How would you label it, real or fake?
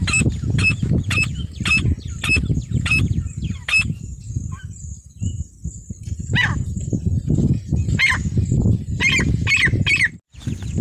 real